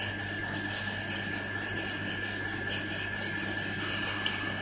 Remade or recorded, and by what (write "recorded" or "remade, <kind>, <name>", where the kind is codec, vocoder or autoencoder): recorded